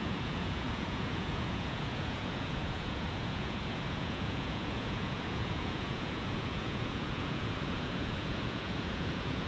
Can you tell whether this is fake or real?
fake